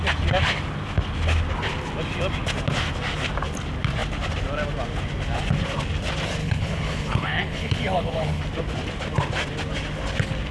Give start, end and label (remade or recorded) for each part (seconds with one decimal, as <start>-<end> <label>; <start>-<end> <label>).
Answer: 0.0-6.4 recorded; 6.4-8.4 remade; 8.4-10.5 recorded